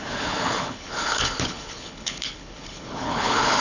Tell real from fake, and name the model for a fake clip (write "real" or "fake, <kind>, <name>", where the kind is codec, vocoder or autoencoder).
fake, codec, HILCodec